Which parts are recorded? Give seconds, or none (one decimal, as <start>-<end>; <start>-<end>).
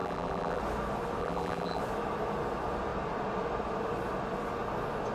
0.6-1.2; 1.8-5.1